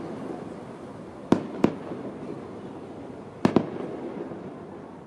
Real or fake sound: real